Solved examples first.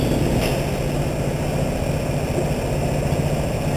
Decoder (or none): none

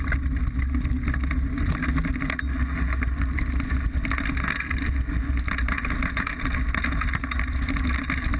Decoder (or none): none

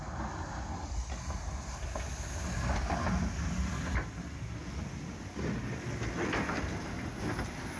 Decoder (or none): none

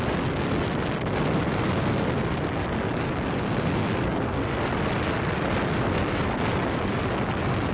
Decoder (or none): none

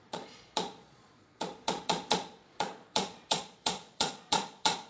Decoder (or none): vocoder, Vocos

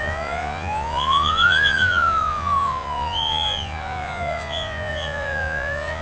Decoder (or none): vocoder, Vocos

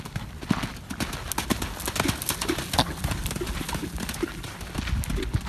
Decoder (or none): none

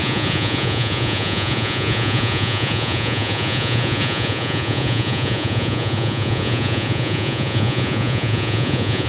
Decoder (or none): vocoder, Vocos